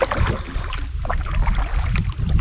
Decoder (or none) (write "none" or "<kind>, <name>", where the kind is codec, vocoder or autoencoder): none